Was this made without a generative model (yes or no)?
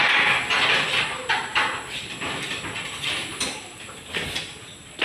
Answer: yes